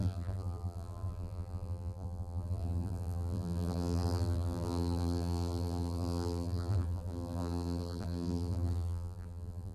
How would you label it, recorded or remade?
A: remade